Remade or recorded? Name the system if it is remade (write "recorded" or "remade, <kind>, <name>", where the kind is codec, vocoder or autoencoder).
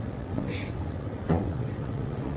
remade, vocoder, WaveNeXt